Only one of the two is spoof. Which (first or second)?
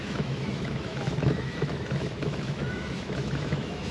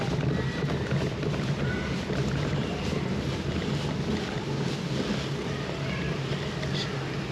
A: first